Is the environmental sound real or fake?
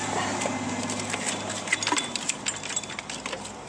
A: real